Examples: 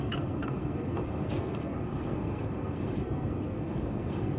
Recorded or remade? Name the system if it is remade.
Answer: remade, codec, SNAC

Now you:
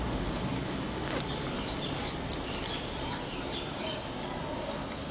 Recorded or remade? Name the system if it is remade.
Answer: recorded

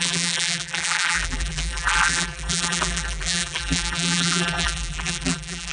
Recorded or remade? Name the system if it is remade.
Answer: remade, vocoder, BigVGAN v2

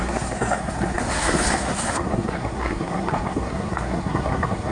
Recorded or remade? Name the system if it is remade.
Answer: remade, codec, SNAC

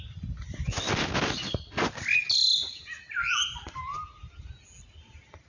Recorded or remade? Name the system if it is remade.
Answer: recorded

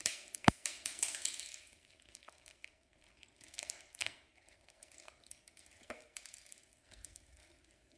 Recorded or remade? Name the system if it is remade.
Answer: remade, codec, SNAC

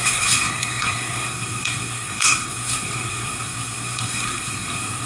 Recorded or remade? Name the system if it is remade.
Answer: remade, codec, SNAC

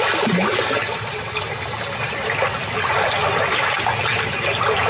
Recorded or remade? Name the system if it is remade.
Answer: recorded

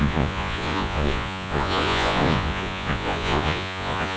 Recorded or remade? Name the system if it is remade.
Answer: remade, vocoder, Vocos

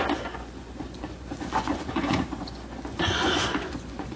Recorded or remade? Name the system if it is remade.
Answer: remade, vocoder, Vocos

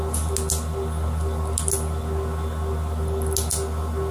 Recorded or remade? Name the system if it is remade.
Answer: recorded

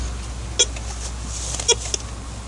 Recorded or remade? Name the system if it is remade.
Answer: recorded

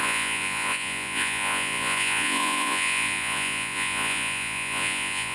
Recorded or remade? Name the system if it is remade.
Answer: remade, vocoder, Vocos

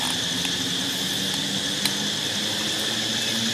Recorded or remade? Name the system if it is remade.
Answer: recorded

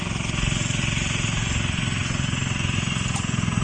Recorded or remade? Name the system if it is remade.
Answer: recorded